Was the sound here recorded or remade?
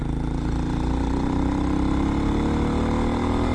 recorded